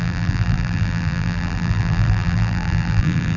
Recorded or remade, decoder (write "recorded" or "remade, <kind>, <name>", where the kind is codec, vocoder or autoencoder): remade, vocoder, BigVGAN v2